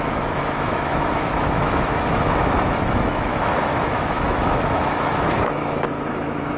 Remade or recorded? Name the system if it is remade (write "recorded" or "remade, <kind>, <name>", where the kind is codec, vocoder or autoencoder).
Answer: remade, autoencoder, DAC-VAE